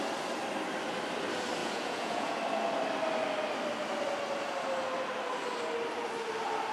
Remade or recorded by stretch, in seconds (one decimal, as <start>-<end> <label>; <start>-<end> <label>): 0.0-1.6 recorded; 1.6-2.4 remade; 2.4-6.7 recorded